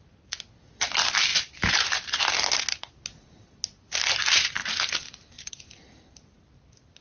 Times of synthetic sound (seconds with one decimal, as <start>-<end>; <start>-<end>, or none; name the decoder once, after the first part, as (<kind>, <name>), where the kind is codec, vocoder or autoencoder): none

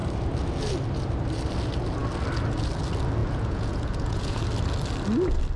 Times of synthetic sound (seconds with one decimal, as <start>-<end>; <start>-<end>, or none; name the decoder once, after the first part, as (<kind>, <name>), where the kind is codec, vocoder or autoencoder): 3.2-4.4 (vocoder, Vocos)

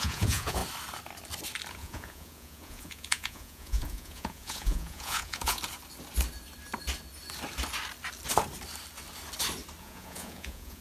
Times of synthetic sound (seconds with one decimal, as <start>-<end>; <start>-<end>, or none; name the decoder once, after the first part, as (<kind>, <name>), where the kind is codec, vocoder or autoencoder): 0.0-0.6 (vocoder, Vocos); 1.7-5.6; 9.8-10.8

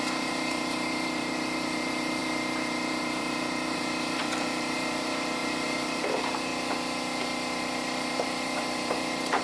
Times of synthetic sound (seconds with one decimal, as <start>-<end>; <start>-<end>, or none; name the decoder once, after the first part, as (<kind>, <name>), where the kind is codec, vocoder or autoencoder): 0.0-6.5 (vocoder, BigVGAN v2); 7.6-9.4

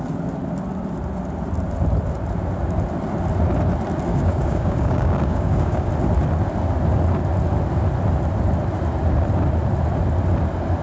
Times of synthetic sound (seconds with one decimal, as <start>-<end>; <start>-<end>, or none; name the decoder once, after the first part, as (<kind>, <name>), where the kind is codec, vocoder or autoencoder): 4.1-5.9 (codec, DAC)